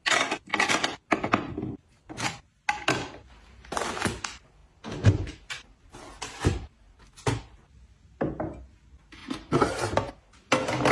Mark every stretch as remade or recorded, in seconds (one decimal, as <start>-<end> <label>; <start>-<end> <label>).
0.0-10.9 recorded